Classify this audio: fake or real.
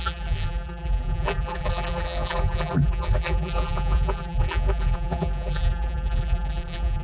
fake